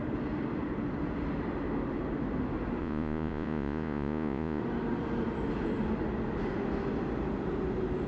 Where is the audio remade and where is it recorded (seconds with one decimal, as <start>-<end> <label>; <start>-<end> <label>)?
0.0-2.8 recorded; 2.8-4.6 remade; 4.6-8.1 recorded